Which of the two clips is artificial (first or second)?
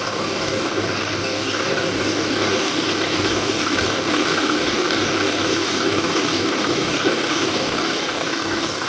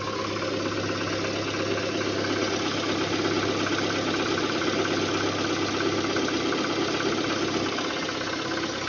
first